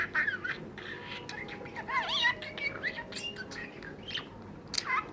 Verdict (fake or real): real